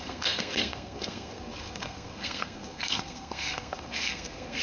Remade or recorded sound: remade